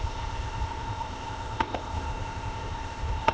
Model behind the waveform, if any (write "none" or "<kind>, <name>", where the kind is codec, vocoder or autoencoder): codec, ZipCodec